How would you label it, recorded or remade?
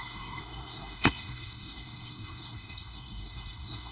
remade